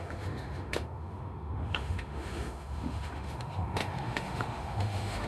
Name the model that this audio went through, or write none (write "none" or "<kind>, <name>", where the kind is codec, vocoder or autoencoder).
autoencoder, DAC-VAE